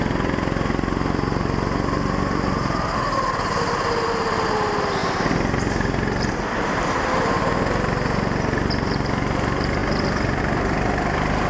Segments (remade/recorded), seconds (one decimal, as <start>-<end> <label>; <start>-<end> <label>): 0.0-11.5 recorded